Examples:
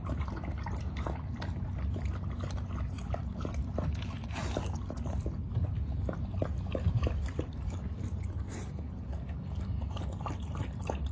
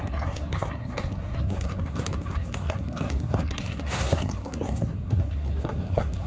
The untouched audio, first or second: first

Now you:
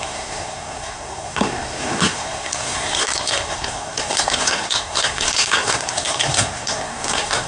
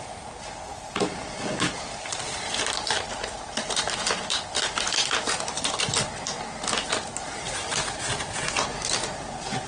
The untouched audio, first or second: second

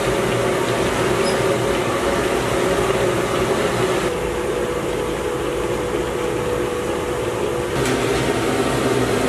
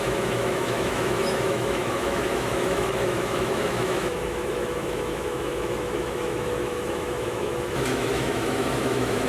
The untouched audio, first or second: first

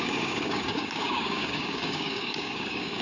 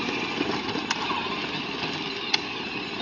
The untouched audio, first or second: second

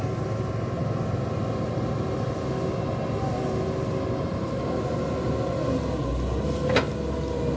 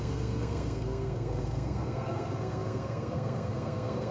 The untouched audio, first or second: first